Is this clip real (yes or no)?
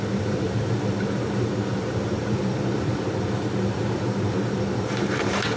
no